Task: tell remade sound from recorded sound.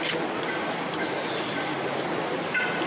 recorded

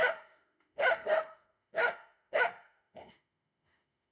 remade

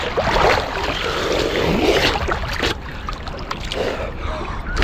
recorded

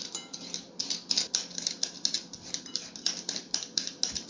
recorded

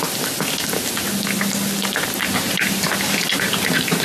recorded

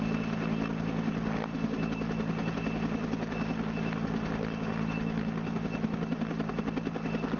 recorded